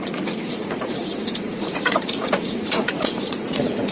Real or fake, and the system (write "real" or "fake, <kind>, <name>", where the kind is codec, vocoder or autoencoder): fake, vocoder, Vocos